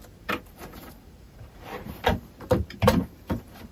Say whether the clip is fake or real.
fake